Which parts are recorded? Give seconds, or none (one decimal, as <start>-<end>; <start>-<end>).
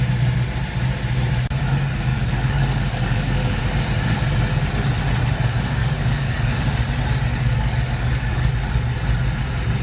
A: 0.0-2.1; 3.6-5.8; 6.6-7.3; 8.5-9.8